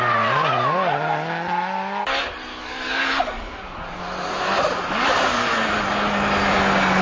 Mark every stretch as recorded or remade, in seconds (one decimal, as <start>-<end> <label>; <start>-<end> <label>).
0.0-2.5 recorded; 2.5-4.0 remade; 4.0-7.0 recorded